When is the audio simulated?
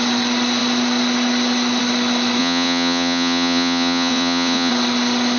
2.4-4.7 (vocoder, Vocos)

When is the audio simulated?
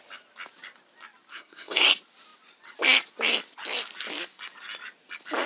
1.3-1.9 (codec, SNAC)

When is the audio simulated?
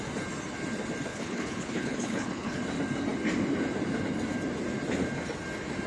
1.1-2.6 (codec, HILCodec)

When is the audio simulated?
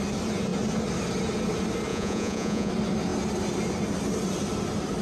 1.9-2.7 (vocoder, Vocos)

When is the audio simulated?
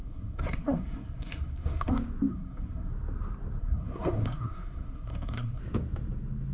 0.0-1.9 (codec, SNAC); 2.3-2.9; 3.6-5.6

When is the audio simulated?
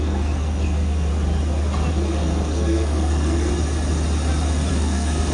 0.0-1.1 (codec, SNAC); 1.9-3.5; 4.7-5.3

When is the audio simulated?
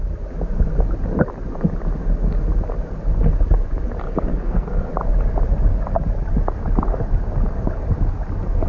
4.3-4.9 (codec, SNAC)